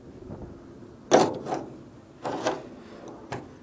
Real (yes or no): yes